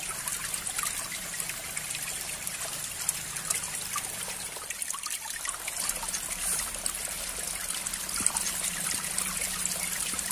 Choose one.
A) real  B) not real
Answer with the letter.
A